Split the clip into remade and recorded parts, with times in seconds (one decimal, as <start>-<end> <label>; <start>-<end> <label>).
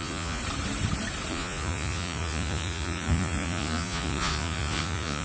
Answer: 0.0-0.4 remade; 0.4-1.3 recorded; 1.3-5.2 remade